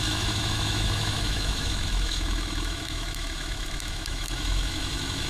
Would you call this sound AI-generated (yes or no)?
yes